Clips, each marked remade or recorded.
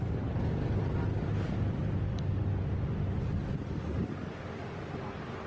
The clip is recorded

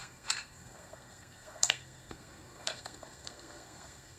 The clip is remade